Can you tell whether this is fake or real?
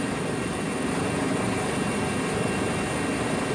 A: real